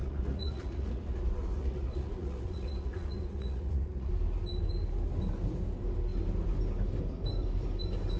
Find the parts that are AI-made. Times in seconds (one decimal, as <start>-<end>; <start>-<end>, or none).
0.0-4.1